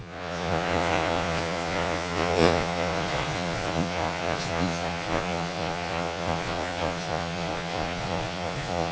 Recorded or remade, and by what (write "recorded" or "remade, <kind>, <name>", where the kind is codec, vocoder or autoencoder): remade, vocoder, Vocos